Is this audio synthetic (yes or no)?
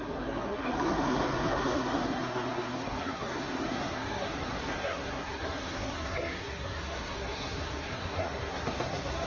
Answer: yes